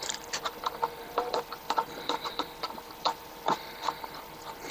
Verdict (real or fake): fake